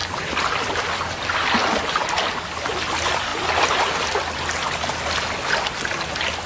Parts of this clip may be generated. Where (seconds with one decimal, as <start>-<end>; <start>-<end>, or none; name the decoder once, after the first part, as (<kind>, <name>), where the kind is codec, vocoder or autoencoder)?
none